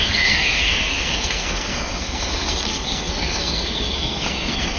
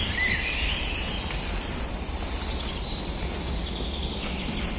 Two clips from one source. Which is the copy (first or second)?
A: first